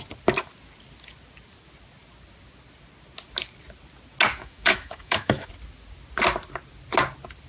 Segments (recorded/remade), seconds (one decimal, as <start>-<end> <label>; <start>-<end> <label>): 0.0-4.3 recorded; 4.3-5.5 remade; 5.5-7.5 recorded